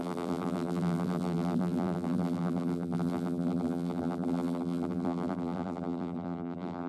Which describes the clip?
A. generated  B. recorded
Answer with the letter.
A